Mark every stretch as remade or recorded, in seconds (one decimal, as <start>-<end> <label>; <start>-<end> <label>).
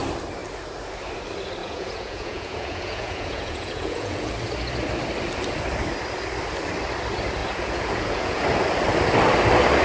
0.0-1.6 recorded; 1.6-4.3 remade; 4.3-7.4 recorded; 7.4-8.4 remade; 8.4-9.8 recorded